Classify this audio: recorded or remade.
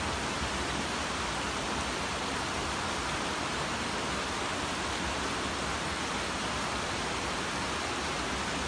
recorded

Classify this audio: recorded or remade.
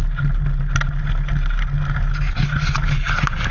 recorded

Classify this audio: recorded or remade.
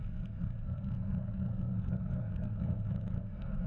remade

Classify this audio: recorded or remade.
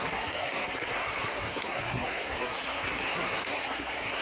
remade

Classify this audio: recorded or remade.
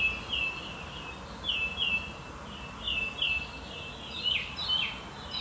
recorded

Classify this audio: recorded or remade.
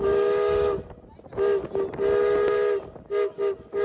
recorded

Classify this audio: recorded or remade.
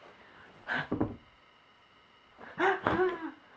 recorded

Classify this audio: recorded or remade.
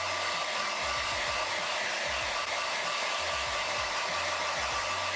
recorded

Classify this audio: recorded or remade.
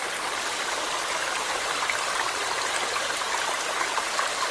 recorded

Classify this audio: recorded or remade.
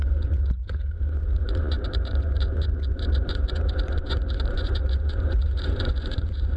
remade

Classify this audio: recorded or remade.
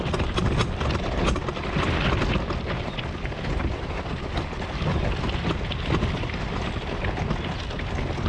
recorded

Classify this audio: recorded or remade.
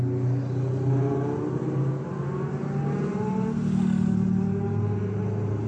recorded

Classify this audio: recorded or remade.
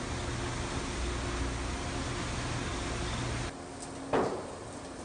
recorded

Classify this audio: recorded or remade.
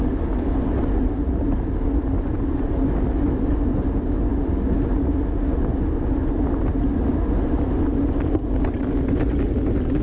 recorded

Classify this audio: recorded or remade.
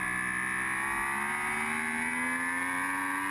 recorded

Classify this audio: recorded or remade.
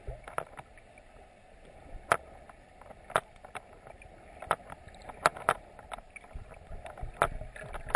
recorded